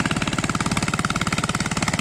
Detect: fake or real real